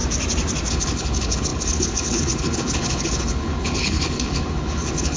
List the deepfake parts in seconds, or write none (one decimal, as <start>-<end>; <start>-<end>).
0.7-5.2